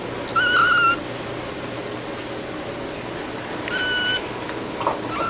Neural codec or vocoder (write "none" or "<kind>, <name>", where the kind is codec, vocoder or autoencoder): none